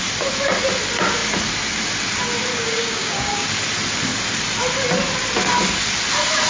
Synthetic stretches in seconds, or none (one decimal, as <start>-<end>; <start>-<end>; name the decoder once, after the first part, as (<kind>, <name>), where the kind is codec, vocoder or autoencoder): 2.5-3.5 (codec, DAC)